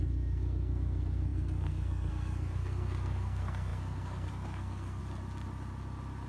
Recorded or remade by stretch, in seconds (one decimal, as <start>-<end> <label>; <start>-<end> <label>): 0.0-5.0 remade; 5.0-6.3 recorded